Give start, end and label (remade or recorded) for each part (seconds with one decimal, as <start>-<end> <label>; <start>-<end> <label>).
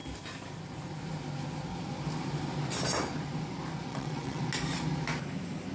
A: 0.0-3.9 recorded; 3.9-4.4 remade; 4.4-5.7 recorded